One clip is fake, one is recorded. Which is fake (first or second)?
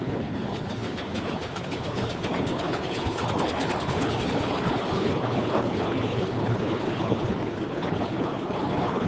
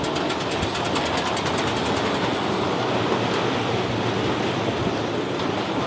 first